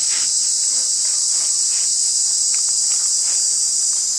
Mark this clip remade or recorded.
recorded